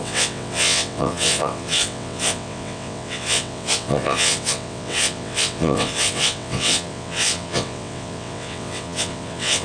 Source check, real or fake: fake